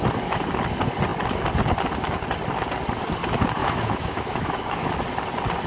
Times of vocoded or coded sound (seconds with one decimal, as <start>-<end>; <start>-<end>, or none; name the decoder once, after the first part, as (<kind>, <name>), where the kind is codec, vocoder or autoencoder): 3.6-4.9 (autoencoder, DAC-VAE)